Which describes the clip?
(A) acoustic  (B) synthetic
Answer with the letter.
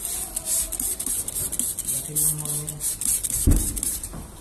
A